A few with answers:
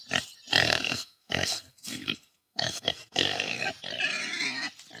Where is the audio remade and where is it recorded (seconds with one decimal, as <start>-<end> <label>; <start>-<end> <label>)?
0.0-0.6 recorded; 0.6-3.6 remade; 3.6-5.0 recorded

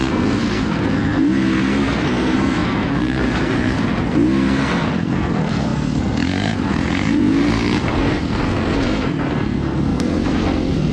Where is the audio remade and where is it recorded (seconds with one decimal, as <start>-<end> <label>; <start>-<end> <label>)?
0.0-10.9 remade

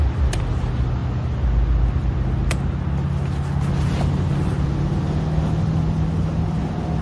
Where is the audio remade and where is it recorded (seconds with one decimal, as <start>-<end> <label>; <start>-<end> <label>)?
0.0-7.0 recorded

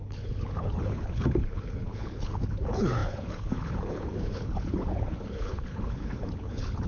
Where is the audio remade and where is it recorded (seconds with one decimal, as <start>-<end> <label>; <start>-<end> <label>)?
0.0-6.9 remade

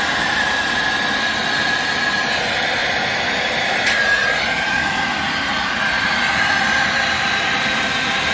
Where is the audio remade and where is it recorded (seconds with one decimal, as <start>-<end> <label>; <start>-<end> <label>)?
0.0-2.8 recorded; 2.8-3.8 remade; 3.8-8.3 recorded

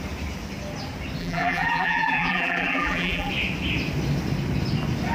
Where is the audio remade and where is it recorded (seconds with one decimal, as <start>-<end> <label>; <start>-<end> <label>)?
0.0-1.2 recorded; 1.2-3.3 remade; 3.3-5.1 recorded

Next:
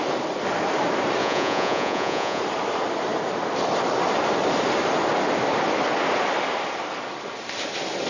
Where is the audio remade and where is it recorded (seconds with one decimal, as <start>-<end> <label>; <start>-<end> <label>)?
0.0-1.2 recorded; 1.2-2.4 remade; 2.4-8.1 recorded

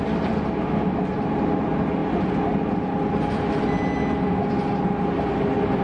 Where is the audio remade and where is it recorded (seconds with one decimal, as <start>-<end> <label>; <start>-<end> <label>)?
0.0-5.8 recorded